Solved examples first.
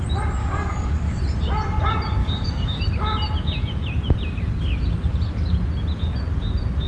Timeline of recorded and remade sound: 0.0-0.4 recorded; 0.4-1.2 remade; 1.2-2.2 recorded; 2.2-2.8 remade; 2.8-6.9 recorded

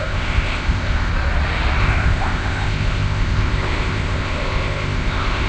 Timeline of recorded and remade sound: 0.0-1.1 remade; 1.1-1.8 recorded; 1.8-5.5 remade

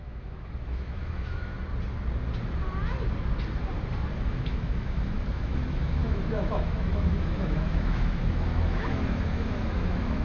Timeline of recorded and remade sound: 0.0-1.5 remade; 1.5-4.3 recorded; 4.3-10.2 remade